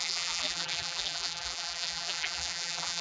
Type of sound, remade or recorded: remade